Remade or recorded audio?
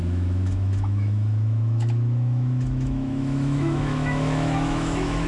remade